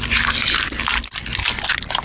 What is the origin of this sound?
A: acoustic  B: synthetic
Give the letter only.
A